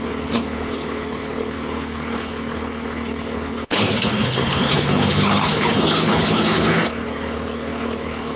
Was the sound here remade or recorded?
remade